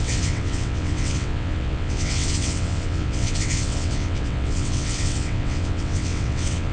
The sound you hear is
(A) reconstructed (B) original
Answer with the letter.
A